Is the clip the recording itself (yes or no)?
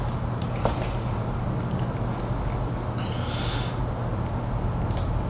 yes